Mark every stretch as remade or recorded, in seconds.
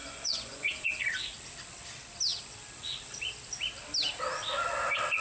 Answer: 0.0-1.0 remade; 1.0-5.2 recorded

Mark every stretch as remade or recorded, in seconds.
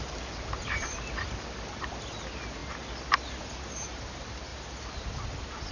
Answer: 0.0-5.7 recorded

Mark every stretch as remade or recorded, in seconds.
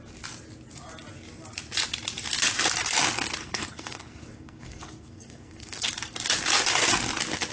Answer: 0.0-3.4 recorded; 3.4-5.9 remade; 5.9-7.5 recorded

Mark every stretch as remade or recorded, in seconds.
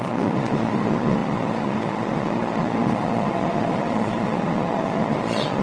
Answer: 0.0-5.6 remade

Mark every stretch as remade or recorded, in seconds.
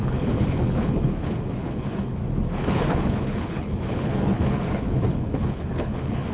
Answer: 0.0-2.2 remade; 2.2-2.7 recorded; 2.7-6.3 remade